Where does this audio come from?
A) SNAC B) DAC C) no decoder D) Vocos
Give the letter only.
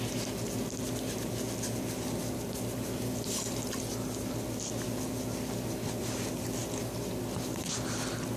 C